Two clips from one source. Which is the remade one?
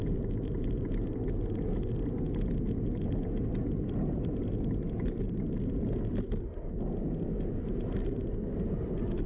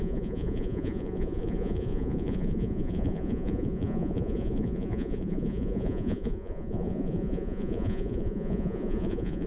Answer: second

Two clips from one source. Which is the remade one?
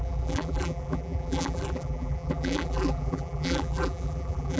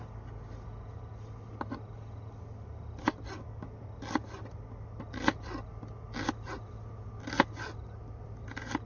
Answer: first